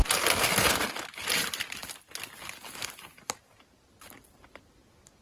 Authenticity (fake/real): real